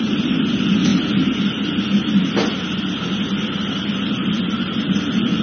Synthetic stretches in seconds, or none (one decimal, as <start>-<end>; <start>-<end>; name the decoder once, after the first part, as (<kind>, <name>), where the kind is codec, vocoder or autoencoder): 0.0-0.9 (vocoder, BigVGAN v2); 2.8-5.4